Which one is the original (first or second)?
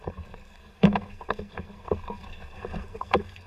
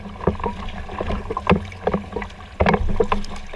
second